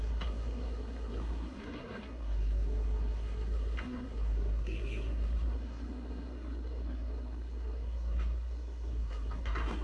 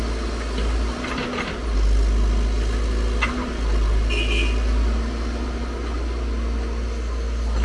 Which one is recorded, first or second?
second